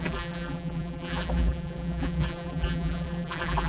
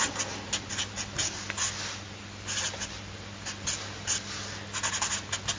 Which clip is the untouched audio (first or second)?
second